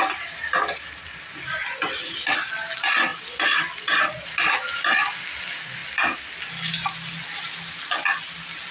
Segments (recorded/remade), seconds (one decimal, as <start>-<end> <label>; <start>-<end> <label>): 0.0-8.7 recorded